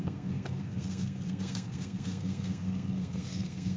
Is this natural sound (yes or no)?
no